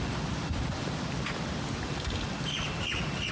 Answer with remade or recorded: recorded